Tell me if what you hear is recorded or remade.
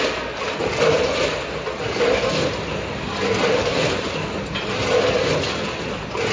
recorded